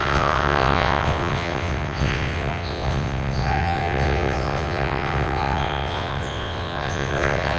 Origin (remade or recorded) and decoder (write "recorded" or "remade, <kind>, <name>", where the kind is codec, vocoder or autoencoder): remade, vocoder, WaveNeXt